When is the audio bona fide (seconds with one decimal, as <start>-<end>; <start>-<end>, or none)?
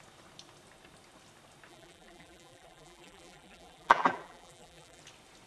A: 0.0-1.7; 5.0-5.5